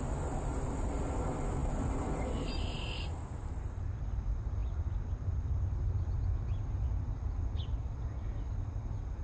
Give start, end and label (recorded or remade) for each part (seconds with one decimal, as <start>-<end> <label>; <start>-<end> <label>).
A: 0.0-9.2 recorded